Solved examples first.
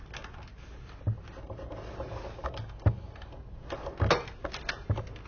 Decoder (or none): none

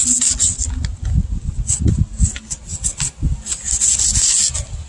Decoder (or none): none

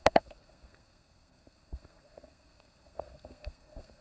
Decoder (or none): codec, SNAC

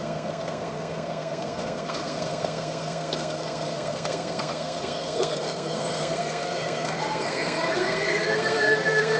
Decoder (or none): codec, SNAC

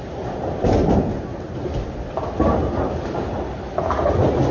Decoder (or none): none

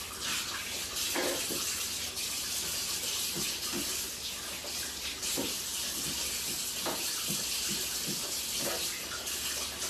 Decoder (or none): none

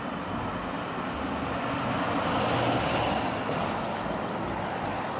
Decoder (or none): none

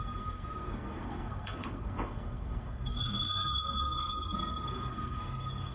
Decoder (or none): codec, SNAC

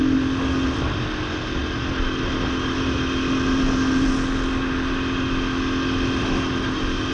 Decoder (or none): none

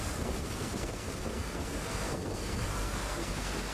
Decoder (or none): codec, SNAC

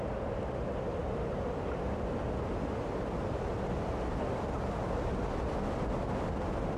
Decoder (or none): none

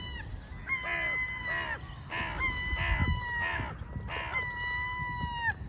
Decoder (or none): none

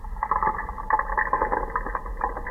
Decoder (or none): none